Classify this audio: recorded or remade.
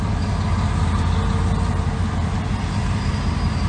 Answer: recorded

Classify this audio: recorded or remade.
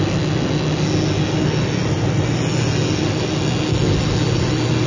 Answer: recorded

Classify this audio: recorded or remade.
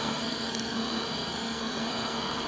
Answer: remade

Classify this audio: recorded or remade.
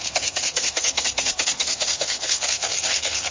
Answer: remade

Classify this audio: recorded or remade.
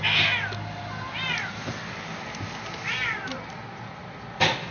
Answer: recorded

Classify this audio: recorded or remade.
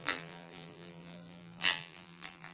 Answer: remade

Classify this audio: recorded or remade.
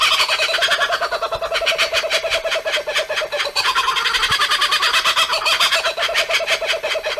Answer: recorded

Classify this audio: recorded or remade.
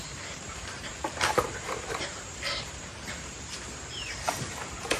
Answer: remade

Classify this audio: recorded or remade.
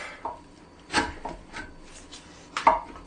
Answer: recorded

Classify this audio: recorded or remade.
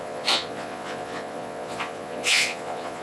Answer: remade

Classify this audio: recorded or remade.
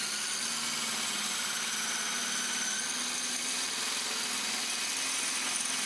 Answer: recorded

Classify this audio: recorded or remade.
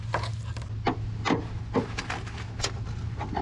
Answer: recorded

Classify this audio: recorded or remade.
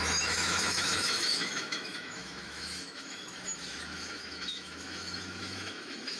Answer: remade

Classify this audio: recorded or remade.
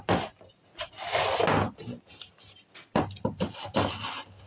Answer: recorded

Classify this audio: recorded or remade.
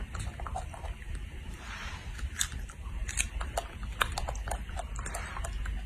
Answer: recorded